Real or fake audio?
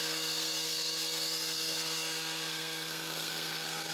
fake